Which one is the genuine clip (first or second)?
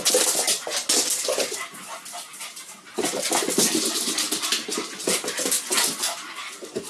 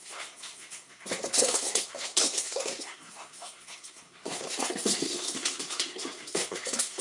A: first